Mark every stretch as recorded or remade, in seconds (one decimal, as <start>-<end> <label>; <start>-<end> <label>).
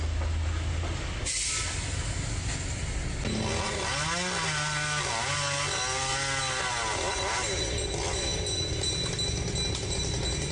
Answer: 0.0-10.5 recorded